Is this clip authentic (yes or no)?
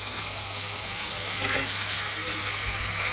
no